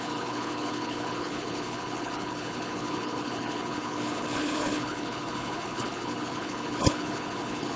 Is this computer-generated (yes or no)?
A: yes